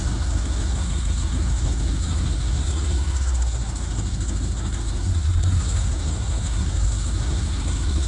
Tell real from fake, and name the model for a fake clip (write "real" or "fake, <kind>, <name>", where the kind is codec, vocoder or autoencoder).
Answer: fake, codec, SNAC